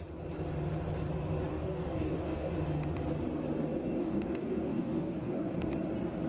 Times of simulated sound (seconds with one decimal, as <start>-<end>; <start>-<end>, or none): 1.5-2.5; 4.0-5.7